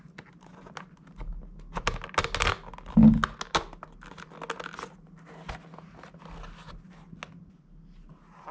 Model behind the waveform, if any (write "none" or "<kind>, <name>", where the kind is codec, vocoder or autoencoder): none